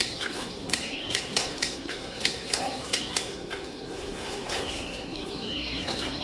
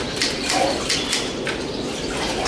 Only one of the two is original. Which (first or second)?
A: second